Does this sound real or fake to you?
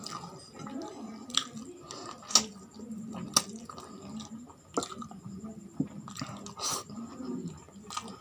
real